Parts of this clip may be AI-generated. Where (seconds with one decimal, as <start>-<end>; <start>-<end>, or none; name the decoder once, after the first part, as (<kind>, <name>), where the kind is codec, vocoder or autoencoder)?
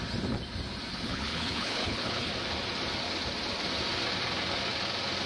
0.9-2.3 (codec, HILCodec)